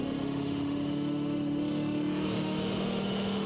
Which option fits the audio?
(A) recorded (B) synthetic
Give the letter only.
B